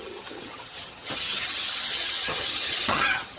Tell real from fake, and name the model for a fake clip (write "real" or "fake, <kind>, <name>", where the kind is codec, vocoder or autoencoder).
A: fake, vocoder, HiFi-GAN